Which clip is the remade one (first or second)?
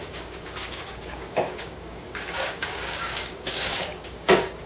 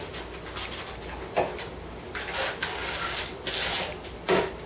first